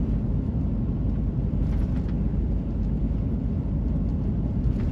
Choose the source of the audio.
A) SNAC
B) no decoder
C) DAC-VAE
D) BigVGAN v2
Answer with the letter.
B